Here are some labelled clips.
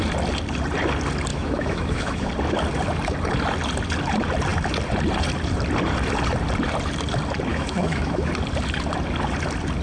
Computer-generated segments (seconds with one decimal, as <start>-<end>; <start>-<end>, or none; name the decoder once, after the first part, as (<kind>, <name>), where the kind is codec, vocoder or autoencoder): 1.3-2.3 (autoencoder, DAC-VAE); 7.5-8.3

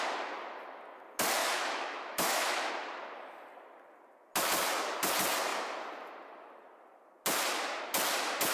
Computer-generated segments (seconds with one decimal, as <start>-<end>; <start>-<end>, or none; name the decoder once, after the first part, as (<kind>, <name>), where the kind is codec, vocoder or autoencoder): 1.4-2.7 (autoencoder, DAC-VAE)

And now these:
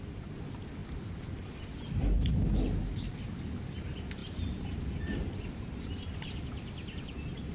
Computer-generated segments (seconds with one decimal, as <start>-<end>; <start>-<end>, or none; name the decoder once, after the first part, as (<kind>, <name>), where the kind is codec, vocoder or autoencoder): none